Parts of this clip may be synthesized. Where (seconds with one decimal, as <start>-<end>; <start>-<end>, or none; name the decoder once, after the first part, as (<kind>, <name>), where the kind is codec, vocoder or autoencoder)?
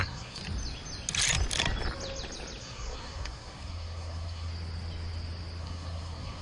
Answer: 0.0-0.4 (codec, SNAC); 2.6-4.5; 5.6-6.4